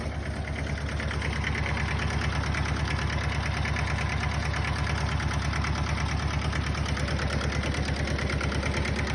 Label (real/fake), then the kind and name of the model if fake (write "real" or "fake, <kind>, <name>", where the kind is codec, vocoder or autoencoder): real